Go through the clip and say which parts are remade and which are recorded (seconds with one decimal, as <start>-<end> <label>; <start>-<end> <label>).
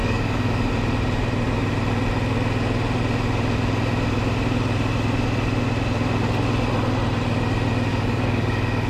0.0-0.7 remade; 0.7-7.9 recorded; 7.9-8.9 remade